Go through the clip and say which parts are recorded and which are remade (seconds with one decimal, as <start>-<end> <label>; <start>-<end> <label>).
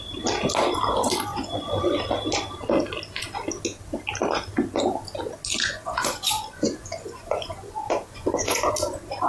0.0-1.3 recorded; 1.3-2.0 remade; 2.0-5.6 recorded; 5.6-8.7 remade; 8.7-9.3 recorded